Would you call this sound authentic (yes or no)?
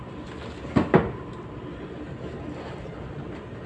yes